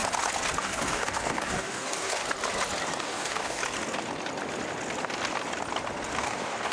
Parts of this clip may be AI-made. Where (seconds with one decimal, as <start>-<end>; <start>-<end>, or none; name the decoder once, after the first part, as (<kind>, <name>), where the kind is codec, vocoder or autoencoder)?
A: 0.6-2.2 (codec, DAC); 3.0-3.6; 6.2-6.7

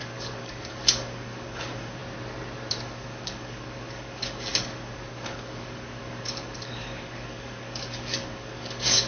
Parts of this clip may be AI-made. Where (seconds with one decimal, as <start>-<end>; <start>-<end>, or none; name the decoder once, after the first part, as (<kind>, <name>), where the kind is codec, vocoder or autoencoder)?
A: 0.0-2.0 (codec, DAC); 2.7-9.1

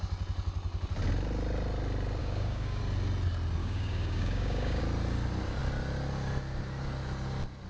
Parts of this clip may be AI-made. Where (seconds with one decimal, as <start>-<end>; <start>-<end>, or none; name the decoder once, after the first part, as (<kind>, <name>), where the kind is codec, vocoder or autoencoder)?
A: 2.2-2.8 (codec, DAC); 3.6-4.8

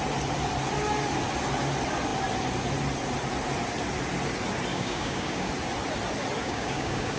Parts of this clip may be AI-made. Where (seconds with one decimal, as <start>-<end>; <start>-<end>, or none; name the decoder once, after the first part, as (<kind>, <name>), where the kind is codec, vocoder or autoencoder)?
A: 4.7-5.5 (codec, DAC); 6.4-7.2

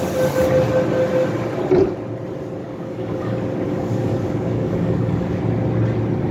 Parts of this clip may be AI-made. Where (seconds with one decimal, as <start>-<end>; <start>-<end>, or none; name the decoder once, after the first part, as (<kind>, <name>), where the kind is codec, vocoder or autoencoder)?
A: 2.6-5.4 (codec, DAC)

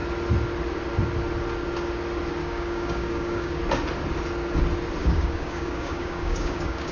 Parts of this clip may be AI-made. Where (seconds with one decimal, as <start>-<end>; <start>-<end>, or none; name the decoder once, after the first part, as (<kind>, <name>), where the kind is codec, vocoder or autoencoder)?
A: 2.4-3.6 (codec, DAC); 5.0-6.9